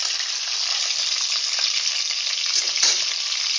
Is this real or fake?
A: real